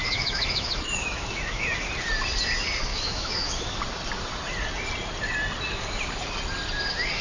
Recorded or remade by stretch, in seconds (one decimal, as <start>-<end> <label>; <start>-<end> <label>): 0.0-1.9 remade; 1.9-2.9 recorded; 2.9-3.8 remade; 3.8-7.2 recorded